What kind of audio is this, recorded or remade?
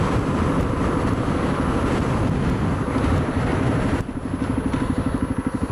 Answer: recorded